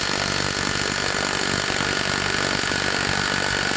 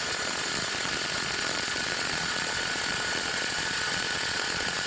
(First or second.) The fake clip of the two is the second